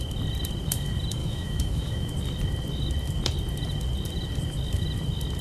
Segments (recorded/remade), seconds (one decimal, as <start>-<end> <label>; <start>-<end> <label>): 0.0-1.2 recorded; 1.2-2.1 remade; 2.1-5.4 recorded

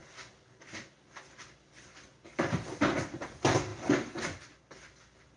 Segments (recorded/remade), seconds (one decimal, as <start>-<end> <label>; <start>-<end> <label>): 0.0-5.4 recorded

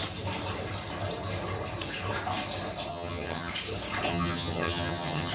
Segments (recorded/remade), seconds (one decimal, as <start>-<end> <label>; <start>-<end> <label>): 0.0-2.9 recorded; 2.9-3.5 remade; 3.5-4.1 recorded; 4.1-5.3 remade

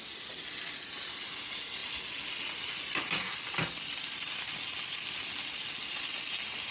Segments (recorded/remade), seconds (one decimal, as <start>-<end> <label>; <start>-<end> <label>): 0.0-6.7 recorded

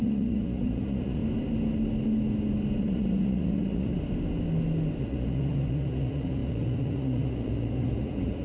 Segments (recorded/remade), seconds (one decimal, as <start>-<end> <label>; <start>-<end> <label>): 0.0-1.2 remade; 1.2-2.8 recorded; 2.8-3.9 remade; 3.9-5.0 recorded; 5.0-8.4 remade

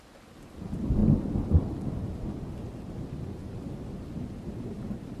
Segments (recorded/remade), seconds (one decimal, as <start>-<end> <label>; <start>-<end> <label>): 0.0-5.2 recorded

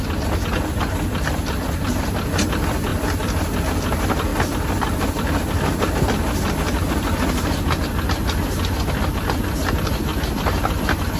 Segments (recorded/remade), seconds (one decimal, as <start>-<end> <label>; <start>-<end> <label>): 0.0-11.2 recorded

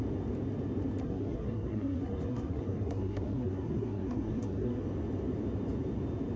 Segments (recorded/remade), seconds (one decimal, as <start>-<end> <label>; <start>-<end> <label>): 0.0-1.0 recorded; 1.0-4.8 remade; 4.8-6.4 recorded